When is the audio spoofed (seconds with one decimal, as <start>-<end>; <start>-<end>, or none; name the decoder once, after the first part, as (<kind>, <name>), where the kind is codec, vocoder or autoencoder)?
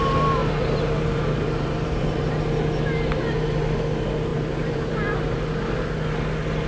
0.4-2.4 (vocoder, BigVGAN v2); 4.3-4.9